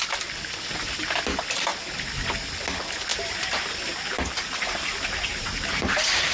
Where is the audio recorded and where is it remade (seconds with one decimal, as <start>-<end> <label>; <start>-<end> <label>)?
0.0-3.1 recorded; 3.1-6.3 remade